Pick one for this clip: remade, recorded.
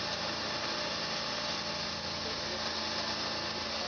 recorded